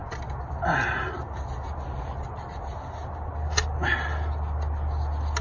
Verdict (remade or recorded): recorded